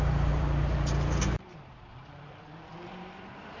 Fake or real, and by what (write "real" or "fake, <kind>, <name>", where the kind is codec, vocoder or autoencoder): fake, vocoder, BigVGAN v2